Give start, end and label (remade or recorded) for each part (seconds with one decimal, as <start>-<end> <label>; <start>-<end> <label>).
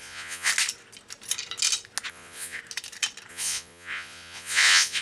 0.0-0.5 remade; 0.5-2.1 recorded; 2.1-2.6 remade; 2.6-3.3 recorded; 3.3-5.0 remade